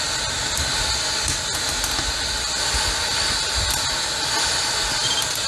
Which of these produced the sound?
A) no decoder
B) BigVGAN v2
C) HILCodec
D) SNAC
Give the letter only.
A